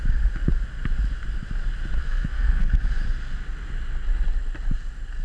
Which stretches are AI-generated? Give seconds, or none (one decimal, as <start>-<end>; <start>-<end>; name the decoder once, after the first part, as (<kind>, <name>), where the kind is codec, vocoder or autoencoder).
2.0-2.7 (codec, SNAC)